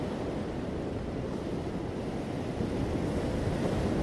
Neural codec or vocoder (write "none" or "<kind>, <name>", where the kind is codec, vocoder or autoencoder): none